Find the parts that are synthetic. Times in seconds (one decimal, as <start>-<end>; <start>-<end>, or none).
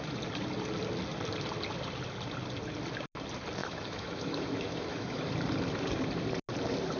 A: 3.6-5.3